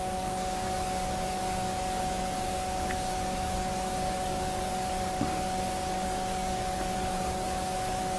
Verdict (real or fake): fake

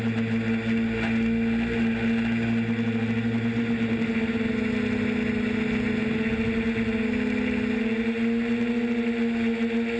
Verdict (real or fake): real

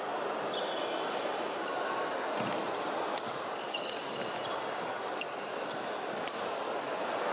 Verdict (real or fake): real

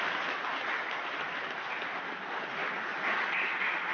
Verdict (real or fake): real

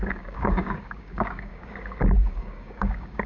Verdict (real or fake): fake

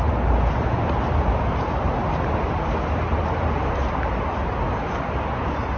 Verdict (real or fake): real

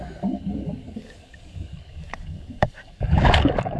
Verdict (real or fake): fake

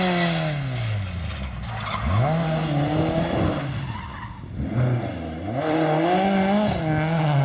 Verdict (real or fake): real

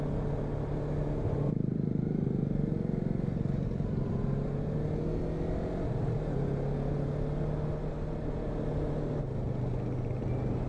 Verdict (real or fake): real